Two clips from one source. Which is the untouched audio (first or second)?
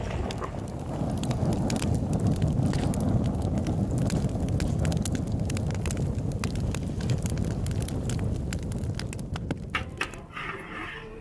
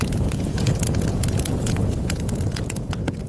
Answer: first